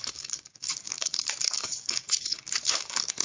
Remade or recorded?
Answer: remade